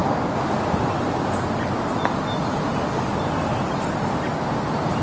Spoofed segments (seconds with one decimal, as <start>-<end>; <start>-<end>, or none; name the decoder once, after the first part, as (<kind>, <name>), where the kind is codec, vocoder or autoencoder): none

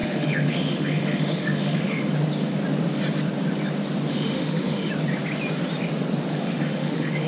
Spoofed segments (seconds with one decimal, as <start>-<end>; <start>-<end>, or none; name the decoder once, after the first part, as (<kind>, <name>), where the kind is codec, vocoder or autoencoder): 0.0-2.1 (autoencoder, DAC-VAE); 4.1-4.9; 6.3-7.3

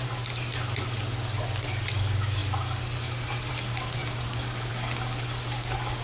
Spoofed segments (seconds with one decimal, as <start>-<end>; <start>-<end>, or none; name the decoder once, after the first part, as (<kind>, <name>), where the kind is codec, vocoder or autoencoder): none

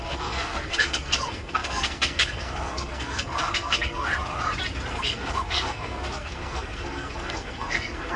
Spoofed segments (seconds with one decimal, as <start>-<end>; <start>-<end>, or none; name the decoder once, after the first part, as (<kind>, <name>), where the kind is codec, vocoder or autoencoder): 0.0-4.1 (codec, SNAC); 4.9-8.2

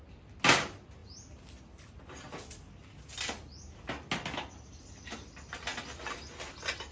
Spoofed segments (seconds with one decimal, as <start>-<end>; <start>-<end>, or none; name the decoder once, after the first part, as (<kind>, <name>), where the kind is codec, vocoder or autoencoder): none

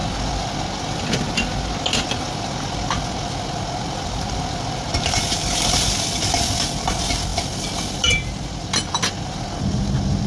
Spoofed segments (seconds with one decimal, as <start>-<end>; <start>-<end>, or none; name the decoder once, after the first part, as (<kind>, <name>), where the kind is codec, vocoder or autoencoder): none

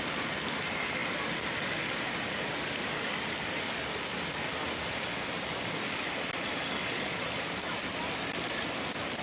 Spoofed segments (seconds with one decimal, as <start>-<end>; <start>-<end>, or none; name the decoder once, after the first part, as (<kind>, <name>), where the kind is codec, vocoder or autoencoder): 6.8-7.3 (vocoder, Vocos)

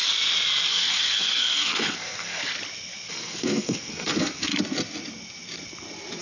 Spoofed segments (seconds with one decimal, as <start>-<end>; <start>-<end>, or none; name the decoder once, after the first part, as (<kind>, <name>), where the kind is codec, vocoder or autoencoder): 0.7-2.5 (codec, SNAC); 3.1-4.5